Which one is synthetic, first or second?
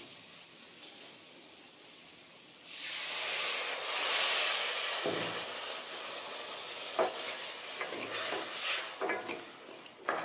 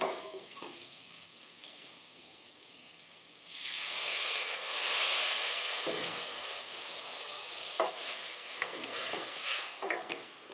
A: second